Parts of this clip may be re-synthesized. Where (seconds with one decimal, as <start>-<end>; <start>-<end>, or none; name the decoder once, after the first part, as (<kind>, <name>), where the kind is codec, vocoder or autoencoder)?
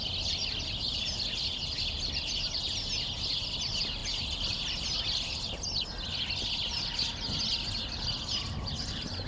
none